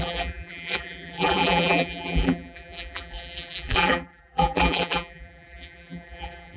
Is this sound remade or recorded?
remade